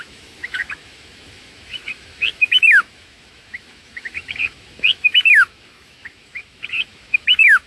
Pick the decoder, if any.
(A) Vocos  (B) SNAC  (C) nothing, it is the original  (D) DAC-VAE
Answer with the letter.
D